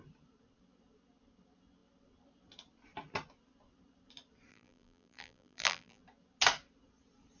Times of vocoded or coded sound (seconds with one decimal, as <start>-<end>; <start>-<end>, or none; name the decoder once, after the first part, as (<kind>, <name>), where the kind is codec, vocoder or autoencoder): 4.5-6.0 (vocoder, BigVGAN v2)